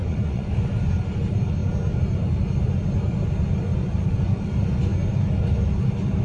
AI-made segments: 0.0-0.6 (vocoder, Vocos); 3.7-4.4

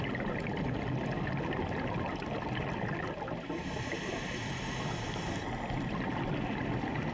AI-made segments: none

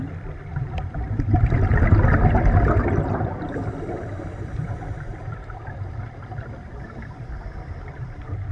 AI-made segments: 0.0-1.7 (vocoder, BigVGAN v2); 3.1-8.5

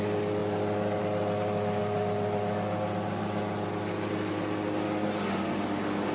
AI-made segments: none

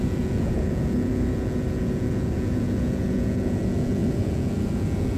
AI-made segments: 0.0-5.2 (vocoder, Vocos)